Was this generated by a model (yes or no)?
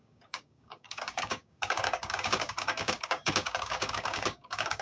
yes